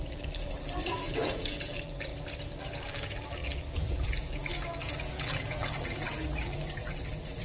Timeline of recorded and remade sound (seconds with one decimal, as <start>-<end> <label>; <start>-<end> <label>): 0.0-2.1 remade; 2.1-2.6 recorded; 2.6-7.4 remade